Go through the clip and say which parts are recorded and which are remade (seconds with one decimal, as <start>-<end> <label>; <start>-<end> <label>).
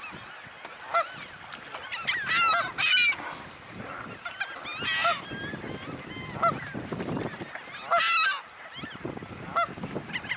0.0-10.4 recorded